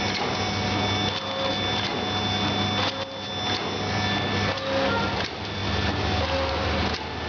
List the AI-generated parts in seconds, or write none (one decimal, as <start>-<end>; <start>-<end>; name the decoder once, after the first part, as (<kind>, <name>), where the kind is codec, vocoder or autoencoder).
none